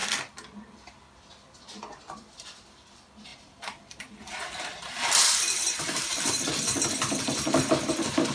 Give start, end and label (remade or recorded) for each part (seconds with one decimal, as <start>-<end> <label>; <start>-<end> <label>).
0.0-0.7 recorded; 0.7-6.5 remade; 6.5-7.6 recorded; 7.6-8.3 remade